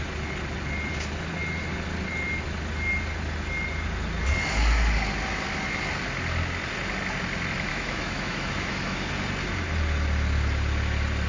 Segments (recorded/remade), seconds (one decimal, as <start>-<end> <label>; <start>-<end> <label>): 0.0-7.7 recorded; 7.7-9.1 remade; 9.1-11.3 recorded